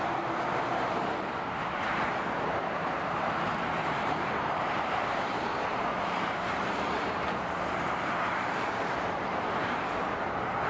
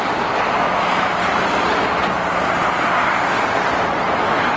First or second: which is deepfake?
first